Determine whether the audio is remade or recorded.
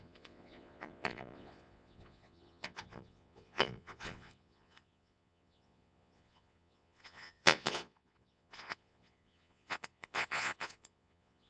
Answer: remade